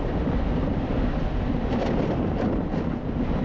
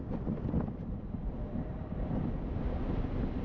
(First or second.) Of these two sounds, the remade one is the second